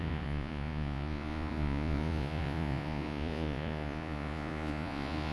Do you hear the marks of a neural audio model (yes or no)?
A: yes